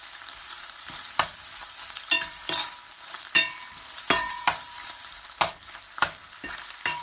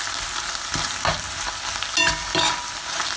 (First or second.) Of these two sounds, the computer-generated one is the first